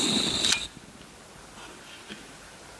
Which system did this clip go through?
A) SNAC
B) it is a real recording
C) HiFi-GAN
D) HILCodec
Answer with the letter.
B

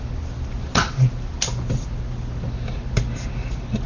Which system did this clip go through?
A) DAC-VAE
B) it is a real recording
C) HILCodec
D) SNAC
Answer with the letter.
B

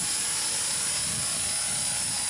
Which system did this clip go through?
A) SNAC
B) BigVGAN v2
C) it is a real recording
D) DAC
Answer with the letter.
C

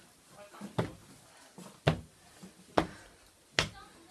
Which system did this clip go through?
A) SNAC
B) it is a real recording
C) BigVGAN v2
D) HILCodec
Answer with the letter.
B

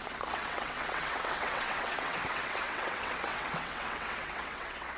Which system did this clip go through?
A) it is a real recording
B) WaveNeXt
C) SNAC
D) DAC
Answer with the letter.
B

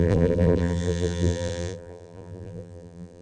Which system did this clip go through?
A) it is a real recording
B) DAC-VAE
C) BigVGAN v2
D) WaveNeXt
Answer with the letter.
C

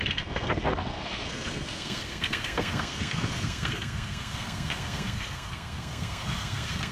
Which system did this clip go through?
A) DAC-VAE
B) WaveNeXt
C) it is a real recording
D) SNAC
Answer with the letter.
D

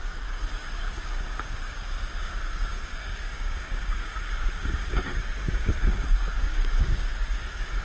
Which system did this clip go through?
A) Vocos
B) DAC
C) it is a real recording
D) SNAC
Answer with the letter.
B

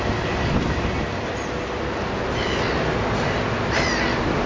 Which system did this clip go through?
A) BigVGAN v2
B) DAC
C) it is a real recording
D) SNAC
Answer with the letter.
C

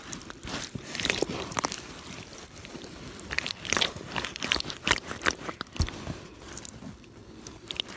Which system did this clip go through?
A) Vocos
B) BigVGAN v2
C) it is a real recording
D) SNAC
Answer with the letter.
B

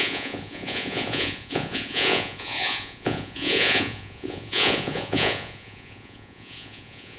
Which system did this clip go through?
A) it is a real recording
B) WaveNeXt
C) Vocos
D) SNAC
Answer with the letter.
C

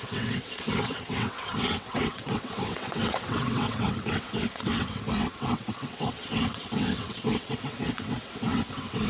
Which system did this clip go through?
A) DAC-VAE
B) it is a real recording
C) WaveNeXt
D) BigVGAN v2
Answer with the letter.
C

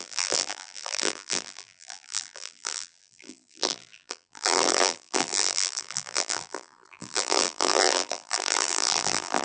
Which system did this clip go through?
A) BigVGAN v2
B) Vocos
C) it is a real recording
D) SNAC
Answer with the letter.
A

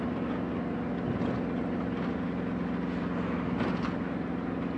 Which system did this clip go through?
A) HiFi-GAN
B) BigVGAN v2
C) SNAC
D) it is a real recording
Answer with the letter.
D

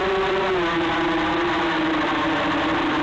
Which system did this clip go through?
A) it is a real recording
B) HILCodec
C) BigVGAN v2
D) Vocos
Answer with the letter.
C